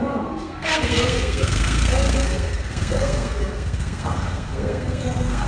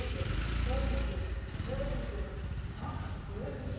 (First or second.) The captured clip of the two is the second